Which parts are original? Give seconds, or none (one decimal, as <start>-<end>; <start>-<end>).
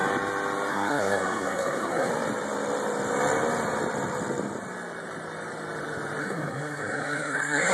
0.0-0.7; 2.1-6.2